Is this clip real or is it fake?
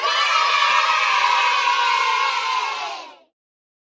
real